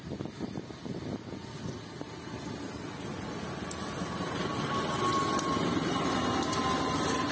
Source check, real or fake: real